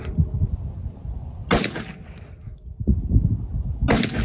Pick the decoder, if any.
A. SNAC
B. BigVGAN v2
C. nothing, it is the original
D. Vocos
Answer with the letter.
C